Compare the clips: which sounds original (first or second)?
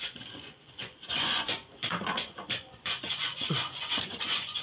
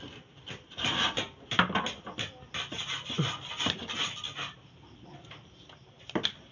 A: second